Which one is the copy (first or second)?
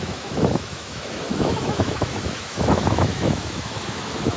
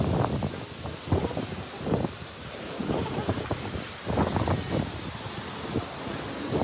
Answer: first